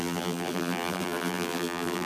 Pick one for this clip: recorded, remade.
remade